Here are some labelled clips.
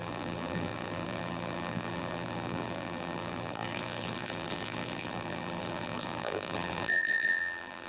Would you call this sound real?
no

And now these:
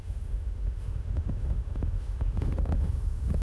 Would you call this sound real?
no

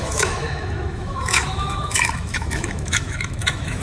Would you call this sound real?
no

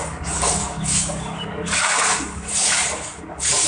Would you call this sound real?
no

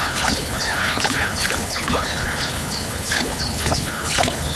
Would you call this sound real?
no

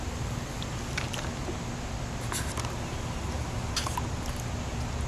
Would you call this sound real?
yes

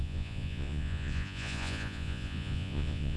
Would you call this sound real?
no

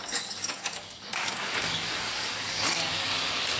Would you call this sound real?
no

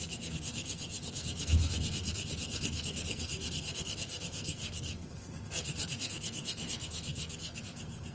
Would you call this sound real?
no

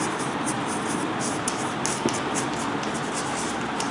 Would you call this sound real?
yes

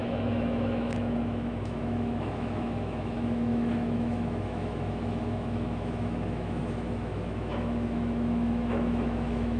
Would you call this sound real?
no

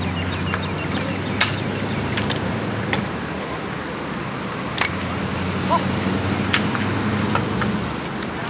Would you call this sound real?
yes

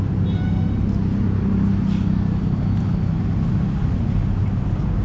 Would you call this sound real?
yes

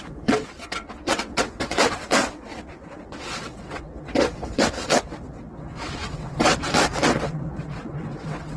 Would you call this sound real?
no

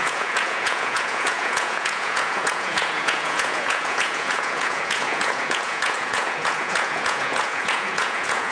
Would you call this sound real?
no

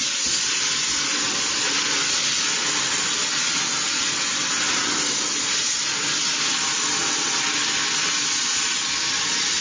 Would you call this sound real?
yes